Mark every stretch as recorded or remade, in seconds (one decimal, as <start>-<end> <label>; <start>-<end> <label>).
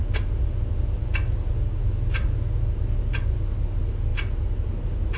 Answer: 0.0-5.2 recorded